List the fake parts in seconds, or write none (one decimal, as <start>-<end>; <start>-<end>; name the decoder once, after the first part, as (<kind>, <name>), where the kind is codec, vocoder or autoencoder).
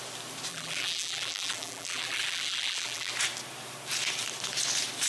0.5-3.1 (vocoder, BigVGAN v2)